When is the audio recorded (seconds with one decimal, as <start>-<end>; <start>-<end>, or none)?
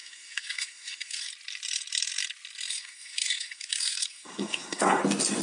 1.3-2.7; 5.0-5.4